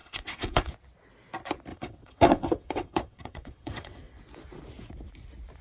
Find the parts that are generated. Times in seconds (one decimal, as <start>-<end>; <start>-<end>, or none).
0.0-0.7; 1.7-4.2